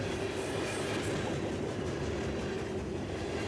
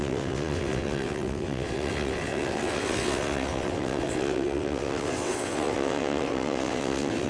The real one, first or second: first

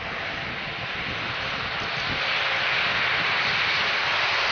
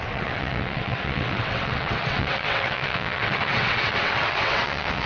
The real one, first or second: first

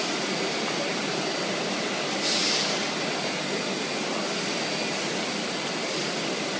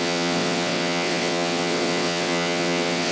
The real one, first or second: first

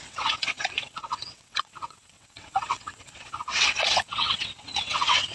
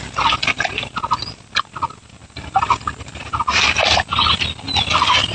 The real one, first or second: second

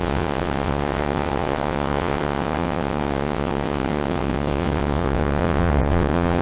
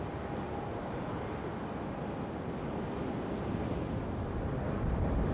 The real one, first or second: second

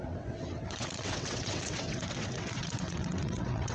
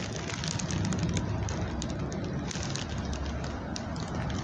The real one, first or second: second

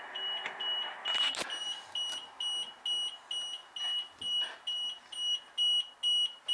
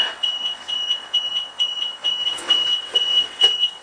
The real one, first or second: first